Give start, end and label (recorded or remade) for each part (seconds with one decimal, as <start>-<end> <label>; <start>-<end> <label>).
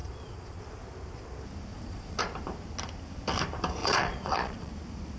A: 0.0-0.6 remade; 0.6-1.7 recorded; 1.7-2.2 remade; 2.2-3.8 recorded; 3.8-4.7 remade; 4.7-5.2 recorded